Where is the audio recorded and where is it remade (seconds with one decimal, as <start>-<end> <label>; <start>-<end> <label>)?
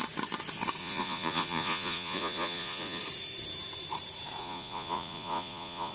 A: 0.0-0.8 recorded; 0.8-3.0 remade; 3.0-4.4 recorded; 4.4-5.9 remade